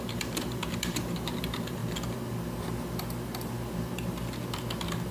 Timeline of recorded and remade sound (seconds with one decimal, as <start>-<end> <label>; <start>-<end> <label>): 0.0-1.8 remade; 1.8-5.1 recorded